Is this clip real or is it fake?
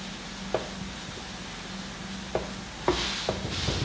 real